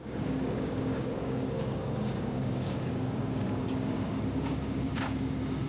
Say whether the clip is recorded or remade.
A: remade